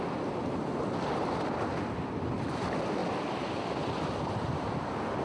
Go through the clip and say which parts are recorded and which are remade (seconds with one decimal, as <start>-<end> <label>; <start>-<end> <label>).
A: 0.0-3.0 recorded; 3.0-4.1 remade; 4.1-5.2 recorded